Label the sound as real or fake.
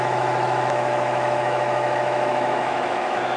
fake